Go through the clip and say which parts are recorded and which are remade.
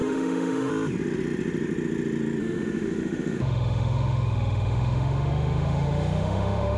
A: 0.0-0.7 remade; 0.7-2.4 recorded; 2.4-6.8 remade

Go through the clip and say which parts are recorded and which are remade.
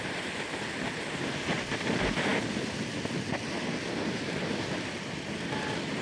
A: 0.0-6.0 recorded